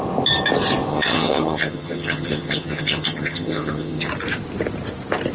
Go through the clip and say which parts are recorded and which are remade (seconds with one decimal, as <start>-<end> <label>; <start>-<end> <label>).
0.0-0.9 recorded; 0.9-4.1 remade; 4.1-5.3 recorded